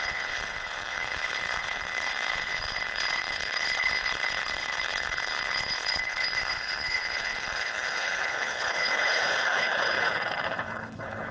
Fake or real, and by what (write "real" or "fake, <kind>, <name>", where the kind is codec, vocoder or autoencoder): fake, codec, HILCodec